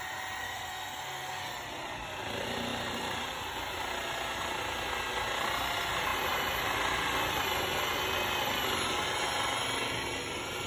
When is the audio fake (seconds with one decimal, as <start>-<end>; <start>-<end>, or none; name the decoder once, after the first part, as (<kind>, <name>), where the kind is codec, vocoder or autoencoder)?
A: 0.4-1.5 (codec, SNAC)